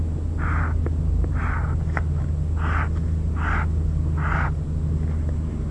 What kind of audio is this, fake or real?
real